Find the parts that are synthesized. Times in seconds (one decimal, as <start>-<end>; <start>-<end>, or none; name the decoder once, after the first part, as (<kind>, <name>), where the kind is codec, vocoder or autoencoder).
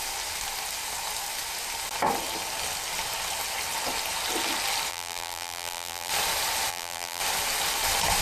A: 4.9-6.1 (vocoder, BigVGAN v2); 6.7-7.2